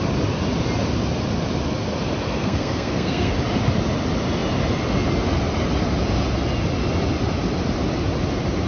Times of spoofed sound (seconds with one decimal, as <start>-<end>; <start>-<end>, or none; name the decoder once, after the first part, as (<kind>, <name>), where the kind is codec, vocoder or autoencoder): 2.4-3.3 (codec, SNAC)